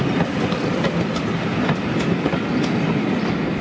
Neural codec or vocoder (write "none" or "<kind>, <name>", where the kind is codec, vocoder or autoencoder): none